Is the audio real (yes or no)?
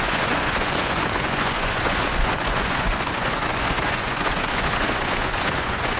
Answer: no